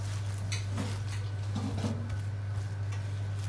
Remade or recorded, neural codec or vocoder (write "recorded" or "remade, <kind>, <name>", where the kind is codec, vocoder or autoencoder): recorded